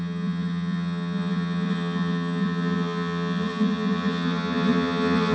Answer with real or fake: fake